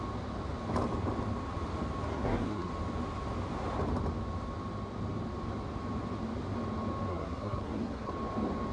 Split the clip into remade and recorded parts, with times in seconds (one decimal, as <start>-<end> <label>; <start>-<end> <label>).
0.0-2.1 recorded; 2.1-2.7 remade; 2.7-7.1 recorded; 7.1-8.1 remade; 8.1-8.7 recorded